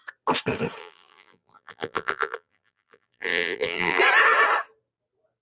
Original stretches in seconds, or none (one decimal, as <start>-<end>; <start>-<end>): 0.0-0.8; 4.0-5.4